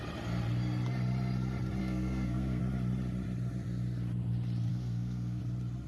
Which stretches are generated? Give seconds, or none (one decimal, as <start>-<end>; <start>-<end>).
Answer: 1.8-2.6; 4.7-5.4